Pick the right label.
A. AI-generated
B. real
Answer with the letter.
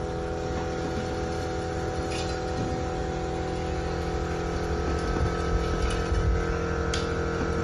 B